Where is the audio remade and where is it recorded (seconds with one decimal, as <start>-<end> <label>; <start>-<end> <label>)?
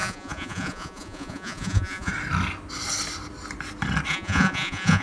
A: 0.0-2.1 remade; 2.1-4.1 recorded; 4.1-5.0 remade